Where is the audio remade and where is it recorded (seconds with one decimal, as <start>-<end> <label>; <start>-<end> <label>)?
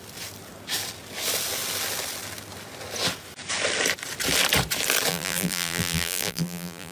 0.0-5.1 recorded; 5.1-6.9 remade